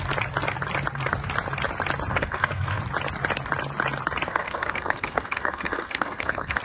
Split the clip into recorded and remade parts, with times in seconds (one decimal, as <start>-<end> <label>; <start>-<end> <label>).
0.0-2.1 recorded; 2.1-2.8 remade; 2.8-4.3 recorded; 4.3-6.6 remade